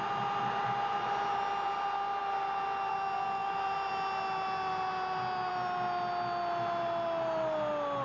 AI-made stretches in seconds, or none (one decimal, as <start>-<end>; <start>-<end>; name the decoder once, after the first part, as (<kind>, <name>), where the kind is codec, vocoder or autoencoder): 3.4-3.9 (vocoder, BigVGAN v2)